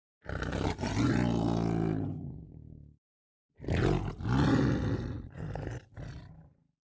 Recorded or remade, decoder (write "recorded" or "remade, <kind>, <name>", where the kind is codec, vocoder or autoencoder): recorded